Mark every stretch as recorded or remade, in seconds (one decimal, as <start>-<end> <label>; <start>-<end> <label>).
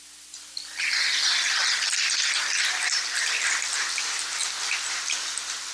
0.0-4.4 recorded; 4.4-5.1 remade; 5.1-5.7 recorded